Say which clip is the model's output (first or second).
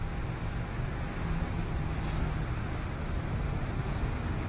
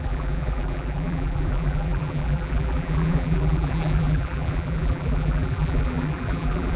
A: second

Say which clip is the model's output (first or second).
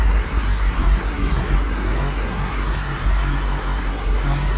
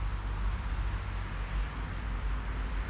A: first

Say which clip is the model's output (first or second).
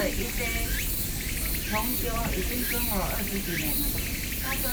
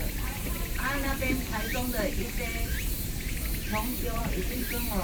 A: second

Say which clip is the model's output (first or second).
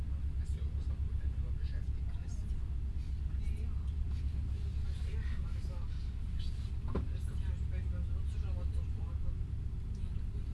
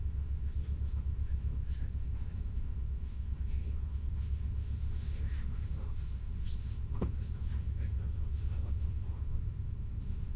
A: second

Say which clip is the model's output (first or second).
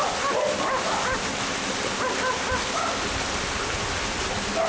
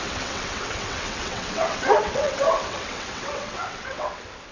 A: second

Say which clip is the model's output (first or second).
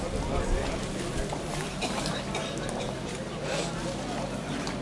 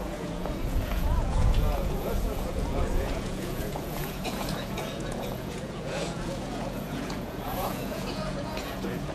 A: second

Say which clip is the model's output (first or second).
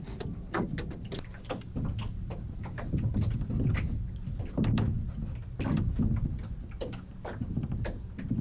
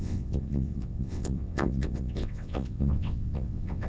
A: second